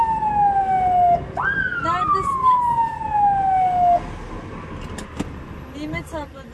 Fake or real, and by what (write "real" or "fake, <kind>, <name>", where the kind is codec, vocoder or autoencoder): real